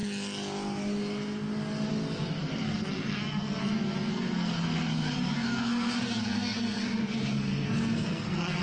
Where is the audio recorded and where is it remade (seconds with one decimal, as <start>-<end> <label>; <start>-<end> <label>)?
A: 0.0-2.6 recorded; 2.6-3.6 remade; 3.6-4.1 recorded; 4.1-8.6 remade